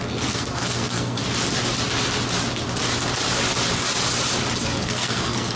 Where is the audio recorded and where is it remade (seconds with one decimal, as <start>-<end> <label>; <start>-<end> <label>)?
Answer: 0.0-1.2 remade; 1.2-4.6 recorded; 4.6-5.6 remade